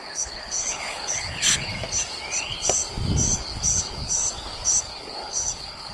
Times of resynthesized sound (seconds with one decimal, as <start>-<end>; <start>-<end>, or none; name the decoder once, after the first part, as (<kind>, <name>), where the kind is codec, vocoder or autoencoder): 0.0-1.7 (codec, HILCodec); 2.4-2.8; 3.4-4.2; 4.8-5.9

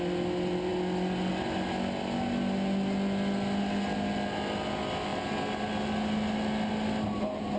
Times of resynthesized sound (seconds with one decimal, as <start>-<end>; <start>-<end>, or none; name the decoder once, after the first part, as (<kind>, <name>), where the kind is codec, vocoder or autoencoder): none

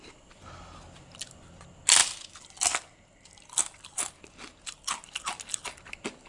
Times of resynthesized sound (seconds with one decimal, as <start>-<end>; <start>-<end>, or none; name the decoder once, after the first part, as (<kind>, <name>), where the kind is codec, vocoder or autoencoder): none

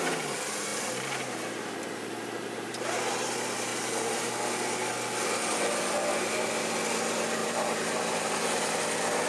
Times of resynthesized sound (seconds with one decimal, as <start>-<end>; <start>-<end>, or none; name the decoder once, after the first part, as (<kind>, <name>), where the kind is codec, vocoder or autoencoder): 0.7-3.1 (vocoder, BigVGAN v2); 3.7-4.3; 7.4-8.8

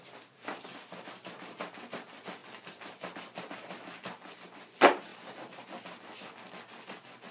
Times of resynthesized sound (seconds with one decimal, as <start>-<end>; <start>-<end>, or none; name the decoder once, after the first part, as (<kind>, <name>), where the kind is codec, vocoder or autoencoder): none

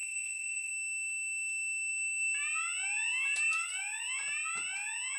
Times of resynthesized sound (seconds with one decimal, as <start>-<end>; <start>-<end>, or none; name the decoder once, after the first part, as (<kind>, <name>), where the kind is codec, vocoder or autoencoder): 0.0-0.7 (vocoder, Vocos)

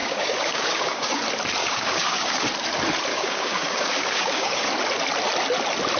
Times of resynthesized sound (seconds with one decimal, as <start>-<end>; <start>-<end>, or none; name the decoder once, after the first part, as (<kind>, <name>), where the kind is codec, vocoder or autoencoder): 0.0-1.2 (codec, DAC); 1.6-2.4; 3.1-4.7